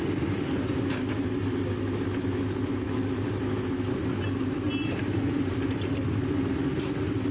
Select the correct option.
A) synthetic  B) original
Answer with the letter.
B